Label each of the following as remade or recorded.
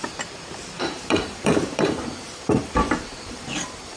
remade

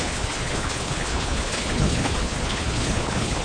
remade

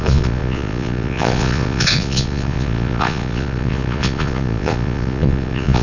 remade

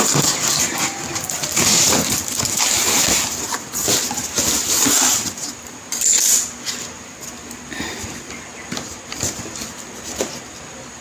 recorded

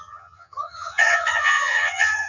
remade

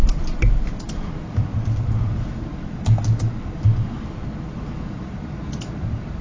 remade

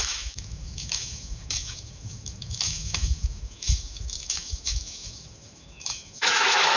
remade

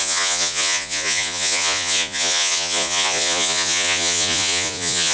remade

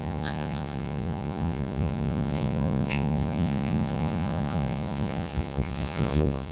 remade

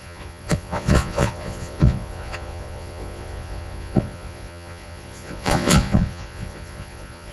remade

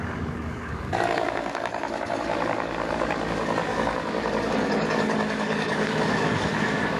remade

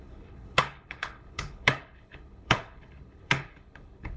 remade